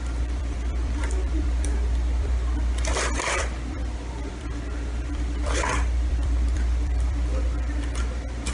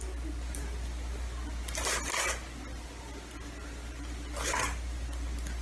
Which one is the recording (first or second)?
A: second